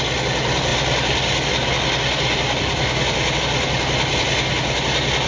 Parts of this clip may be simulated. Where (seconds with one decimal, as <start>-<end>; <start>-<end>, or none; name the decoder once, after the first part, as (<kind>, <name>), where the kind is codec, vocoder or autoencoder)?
0.7-3.4 (vocoder, BigVGAN v2)

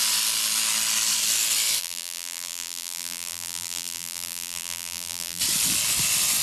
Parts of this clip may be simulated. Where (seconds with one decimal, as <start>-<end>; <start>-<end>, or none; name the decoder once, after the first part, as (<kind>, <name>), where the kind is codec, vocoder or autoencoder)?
1.8-5.4 (vocoder, BigVGAN v2)

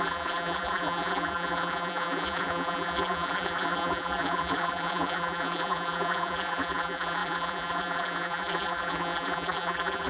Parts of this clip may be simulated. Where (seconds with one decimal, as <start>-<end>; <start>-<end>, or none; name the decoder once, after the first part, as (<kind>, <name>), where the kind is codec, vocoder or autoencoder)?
0.0-10.1 (vocoder, BigVGAN v2)

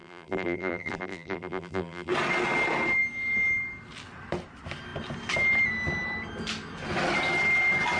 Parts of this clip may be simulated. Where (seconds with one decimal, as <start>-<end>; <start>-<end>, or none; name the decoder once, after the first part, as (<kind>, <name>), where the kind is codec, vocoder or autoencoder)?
0.0-2.1 (vocoder, BigVGAN v2)

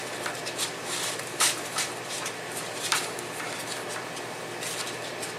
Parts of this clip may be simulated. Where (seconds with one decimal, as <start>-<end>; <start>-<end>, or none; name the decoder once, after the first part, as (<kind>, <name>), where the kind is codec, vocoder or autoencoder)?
0.4-3.6 (vocoder, BigVGAN v2)